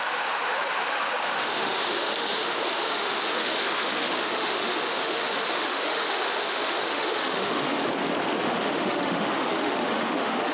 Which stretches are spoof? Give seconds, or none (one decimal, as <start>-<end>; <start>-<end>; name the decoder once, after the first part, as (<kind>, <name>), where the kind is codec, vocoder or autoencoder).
0.0-7.8 (autoencoder, DAC-VAE); 8.4-10.5